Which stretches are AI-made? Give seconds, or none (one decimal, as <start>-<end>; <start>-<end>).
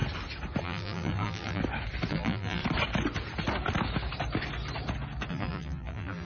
0.6-1.6; 2.1-2.6; 5.3-6.2